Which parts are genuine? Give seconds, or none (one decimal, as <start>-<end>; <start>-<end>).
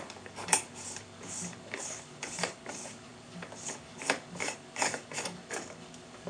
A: none